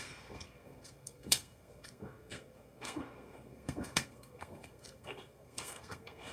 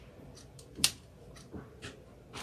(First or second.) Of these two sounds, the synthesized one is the first